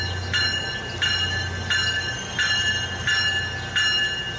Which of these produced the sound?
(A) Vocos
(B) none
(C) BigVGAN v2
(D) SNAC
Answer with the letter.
B